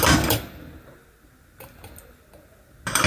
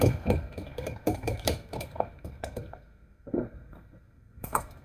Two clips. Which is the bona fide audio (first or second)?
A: first